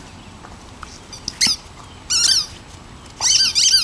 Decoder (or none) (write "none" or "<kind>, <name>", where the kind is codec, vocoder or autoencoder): none